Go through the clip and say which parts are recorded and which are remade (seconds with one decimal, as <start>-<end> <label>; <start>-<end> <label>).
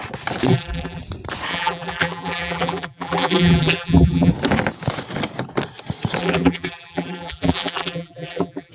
0.0-0.5 recorded; 0.5-1.0 remade; 1.0-1.5 recorded; 1.5-4.3 remade; 4.3-6.2 recorded; 6.2-8.7 remade